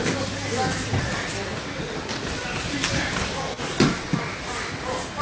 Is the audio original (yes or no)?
yes